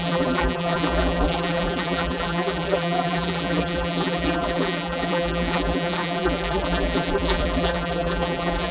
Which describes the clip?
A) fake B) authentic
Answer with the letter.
A